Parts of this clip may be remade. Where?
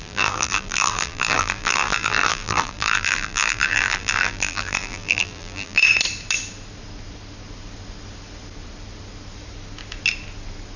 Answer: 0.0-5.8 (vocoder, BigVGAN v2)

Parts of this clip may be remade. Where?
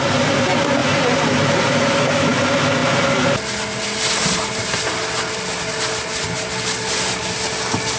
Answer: none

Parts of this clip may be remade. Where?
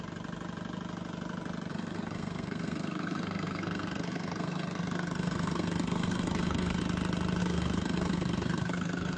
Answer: 1.7-6.8 (codec, SNAC); 7.4-9.2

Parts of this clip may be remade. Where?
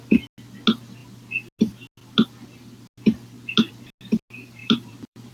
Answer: 4.6-5.3 (vocoder, BigVGAN v2)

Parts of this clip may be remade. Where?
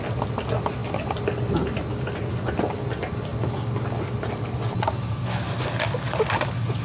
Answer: none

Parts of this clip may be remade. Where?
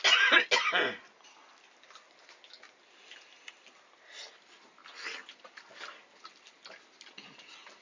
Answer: none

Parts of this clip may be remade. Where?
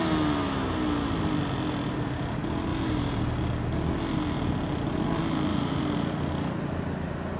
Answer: 2.7-3.4 (vocoder, BigVGAN v2); 5.5-6.5